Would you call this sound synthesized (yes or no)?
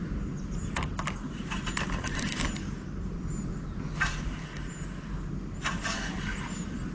no